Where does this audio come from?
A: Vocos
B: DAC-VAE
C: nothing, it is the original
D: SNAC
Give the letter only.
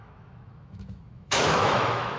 B